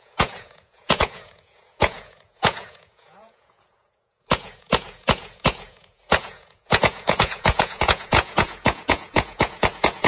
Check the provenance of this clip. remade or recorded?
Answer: remade